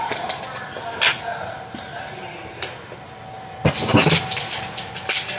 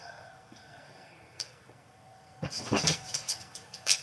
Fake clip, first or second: second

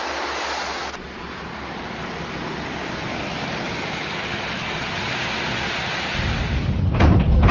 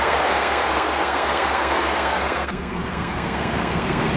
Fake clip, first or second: second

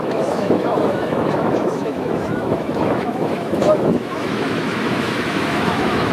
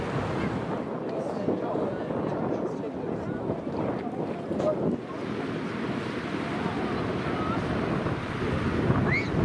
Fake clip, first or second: first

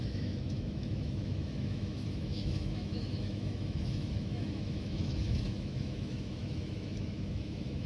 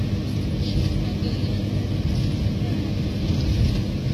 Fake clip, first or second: first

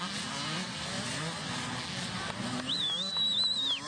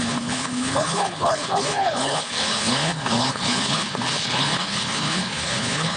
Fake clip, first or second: second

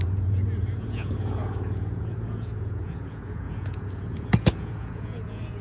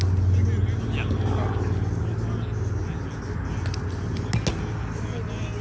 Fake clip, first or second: first